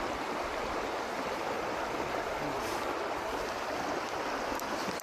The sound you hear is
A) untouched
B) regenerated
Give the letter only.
A